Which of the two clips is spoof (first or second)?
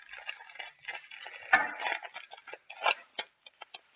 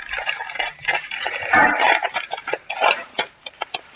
second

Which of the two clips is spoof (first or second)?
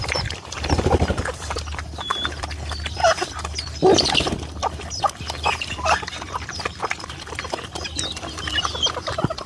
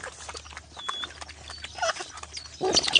first